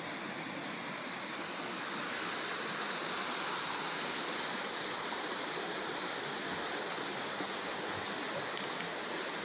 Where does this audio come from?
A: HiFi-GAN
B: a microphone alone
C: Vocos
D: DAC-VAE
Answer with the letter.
B